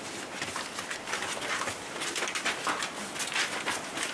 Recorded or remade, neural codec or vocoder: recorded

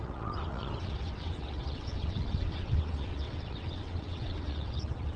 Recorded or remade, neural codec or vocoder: remade, vocoder, WaveNeXt